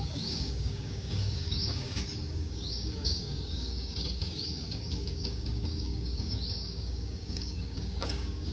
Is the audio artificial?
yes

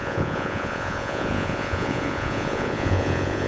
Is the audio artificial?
yes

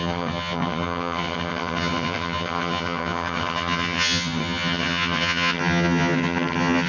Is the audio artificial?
yes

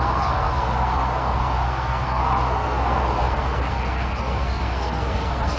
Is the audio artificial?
yes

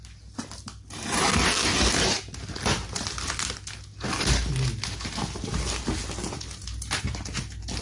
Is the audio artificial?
no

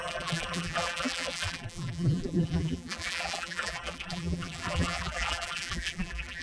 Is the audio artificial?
yes